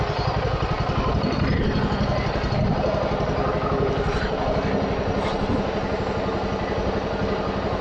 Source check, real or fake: real